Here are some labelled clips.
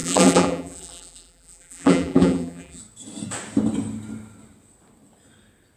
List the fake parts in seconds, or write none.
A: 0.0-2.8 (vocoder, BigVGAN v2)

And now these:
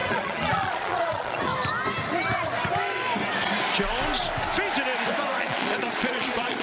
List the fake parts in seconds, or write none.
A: 0.0-1.5 (vocoder, Vocos); 5.4-6.6

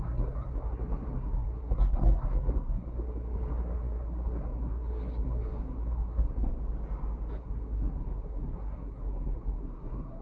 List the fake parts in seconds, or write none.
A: 0.0-6.5 (codec, SNAC); 7.4-10.2